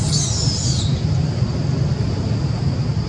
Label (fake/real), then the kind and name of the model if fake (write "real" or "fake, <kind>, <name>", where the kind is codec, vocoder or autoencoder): real